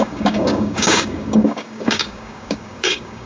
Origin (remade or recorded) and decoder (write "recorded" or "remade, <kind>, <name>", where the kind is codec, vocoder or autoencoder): remade, codec, DAC